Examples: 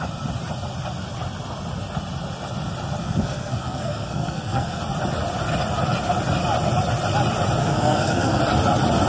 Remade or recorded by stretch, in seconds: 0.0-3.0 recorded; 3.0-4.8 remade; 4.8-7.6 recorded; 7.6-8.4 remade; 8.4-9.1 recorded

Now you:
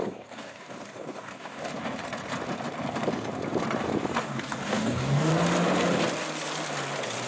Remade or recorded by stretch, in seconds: 0.0-1.7 remade; 1.7-4.2 recorded; 4.2-5.3 remade; 5.3-7.3 recorded

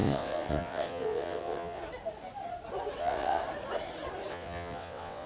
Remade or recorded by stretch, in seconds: 0.0-1.8 remade; 1.8-3.0 recorded; 3.0-3.4 remade; 3.4-4.3 recorded; 4.3-5.3 remade

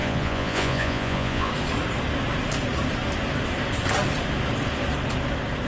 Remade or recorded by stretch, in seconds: 0.0-1.5 remade; 1.5-5.7 recorded

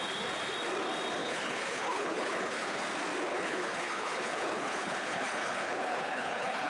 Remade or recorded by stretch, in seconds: 0.0-1.2 recorded; 1.2-2.8 remade; 2.8-3.3 recorded; 3.3-6.7 remade